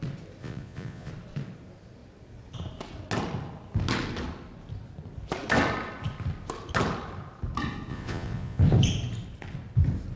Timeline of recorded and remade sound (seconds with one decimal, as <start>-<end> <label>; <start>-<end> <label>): 0.0-0.4 recorded; 0.4-1.1 remade; 1.1-7.9 recorded; 7.9-8.6 remade; 8.6-10.2 recorded